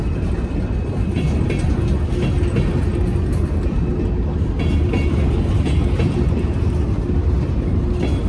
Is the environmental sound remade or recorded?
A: recorded